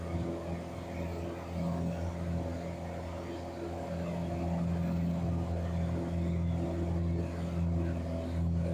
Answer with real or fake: real